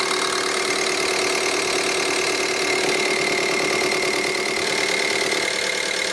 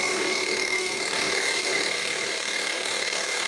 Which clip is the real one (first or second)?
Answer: first